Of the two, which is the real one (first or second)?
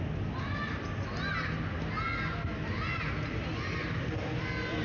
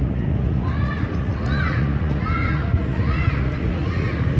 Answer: first